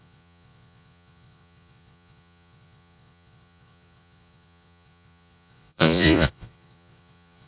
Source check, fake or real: fake